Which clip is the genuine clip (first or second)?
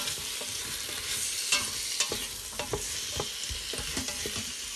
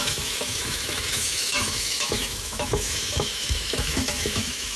first